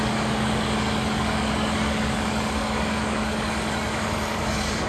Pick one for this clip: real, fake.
fake